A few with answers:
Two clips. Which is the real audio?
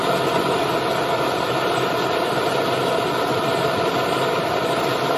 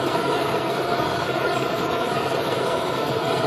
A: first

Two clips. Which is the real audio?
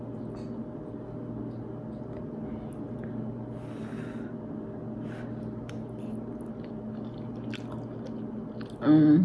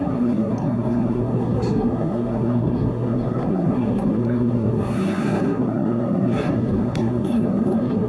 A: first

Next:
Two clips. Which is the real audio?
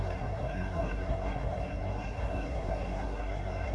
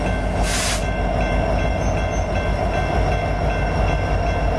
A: second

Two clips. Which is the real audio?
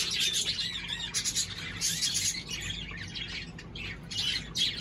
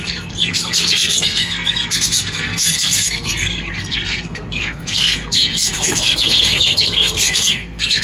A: first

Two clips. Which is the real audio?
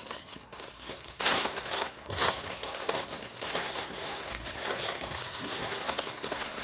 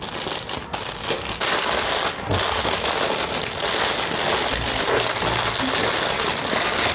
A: second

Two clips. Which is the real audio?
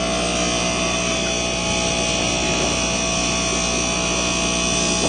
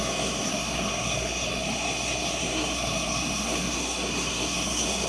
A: first